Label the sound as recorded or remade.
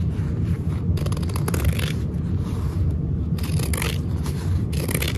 recorded